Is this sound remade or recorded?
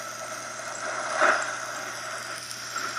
recorded